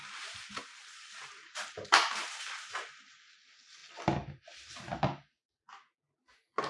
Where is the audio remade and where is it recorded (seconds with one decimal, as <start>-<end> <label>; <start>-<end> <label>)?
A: 0.0-3.2 remade; 3.2-6.7 recorded